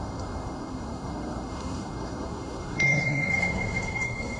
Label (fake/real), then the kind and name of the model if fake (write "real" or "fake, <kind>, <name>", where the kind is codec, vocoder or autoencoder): fake, codec, SNAC